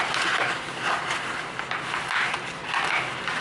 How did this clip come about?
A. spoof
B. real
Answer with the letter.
B